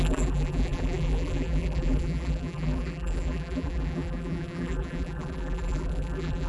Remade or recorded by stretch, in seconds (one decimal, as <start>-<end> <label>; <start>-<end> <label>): 0.0-6.5 remade